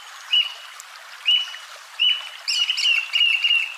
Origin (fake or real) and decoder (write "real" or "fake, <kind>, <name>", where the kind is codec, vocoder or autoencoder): real